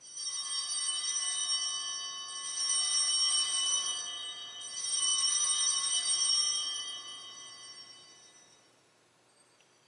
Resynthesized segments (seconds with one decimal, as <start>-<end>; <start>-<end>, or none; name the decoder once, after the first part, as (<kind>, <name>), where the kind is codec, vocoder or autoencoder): 0.0-1.4 (vocoder, BigVGAN v2); 3.3-9.9